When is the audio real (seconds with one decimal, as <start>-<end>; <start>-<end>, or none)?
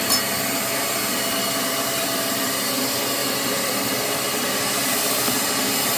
0.0-6.0